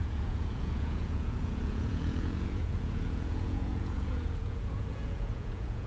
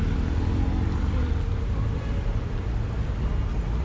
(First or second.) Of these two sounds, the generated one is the first